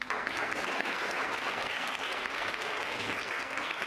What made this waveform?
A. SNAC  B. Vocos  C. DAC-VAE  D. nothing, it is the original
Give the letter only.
A